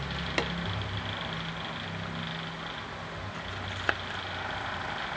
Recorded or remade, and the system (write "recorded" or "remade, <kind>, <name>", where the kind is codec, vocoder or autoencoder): recorded